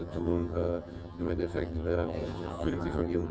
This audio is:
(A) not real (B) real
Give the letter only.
A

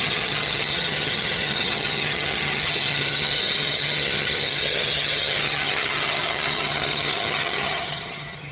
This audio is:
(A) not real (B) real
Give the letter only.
A